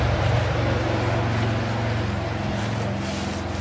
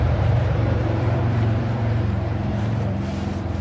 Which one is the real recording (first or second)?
first